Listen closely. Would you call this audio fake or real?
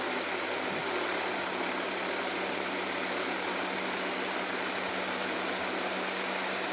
real